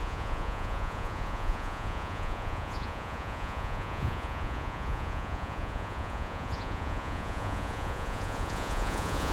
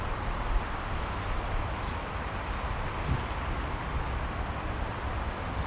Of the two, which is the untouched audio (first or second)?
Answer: second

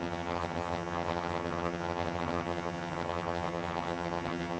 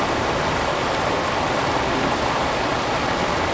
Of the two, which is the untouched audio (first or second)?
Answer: second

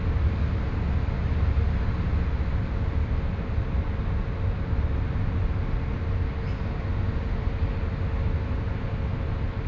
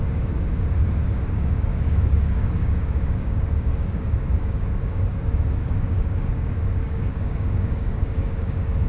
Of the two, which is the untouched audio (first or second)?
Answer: first